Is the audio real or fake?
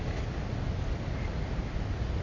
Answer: real